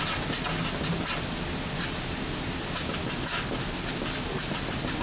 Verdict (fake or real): real